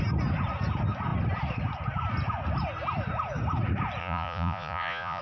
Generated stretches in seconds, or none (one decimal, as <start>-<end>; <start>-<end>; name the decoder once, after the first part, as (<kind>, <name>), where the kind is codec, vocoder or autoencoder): 4.0-5.2 (vocoder, Vocos)

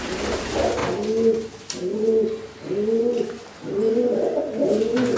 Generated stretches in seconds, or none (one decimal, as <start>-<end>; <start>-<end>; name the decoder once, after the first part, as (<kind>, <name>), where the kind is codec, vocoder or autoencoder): none

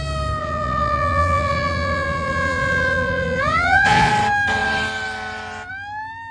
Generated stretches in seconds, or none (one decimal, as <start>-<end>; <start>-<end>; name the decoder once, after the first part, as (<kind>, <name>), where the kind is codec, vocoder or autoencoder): 0.4-4.1 (vocoder, Vocos)

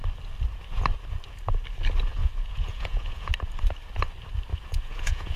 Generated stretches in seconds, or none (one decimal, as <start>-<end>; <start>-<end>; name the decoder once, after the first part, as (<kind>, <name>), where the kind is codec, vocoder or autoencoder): 2.2-3.3 (vocoder, Vocos); 4.5-5.4